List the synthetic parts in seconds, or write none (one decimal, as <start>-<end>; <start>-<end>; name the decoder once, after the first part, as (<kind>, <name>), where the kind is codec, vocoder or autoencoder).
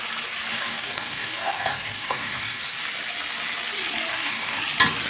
0.5-2.6 (codec, DAC); 4.1-4.6